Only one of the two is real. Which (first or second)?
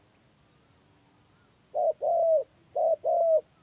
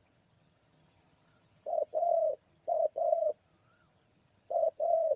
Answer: first